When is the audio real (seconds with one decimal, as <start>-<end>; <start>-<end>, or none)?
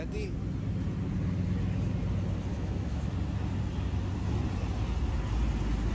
0.0-2.5; 3.1-5.9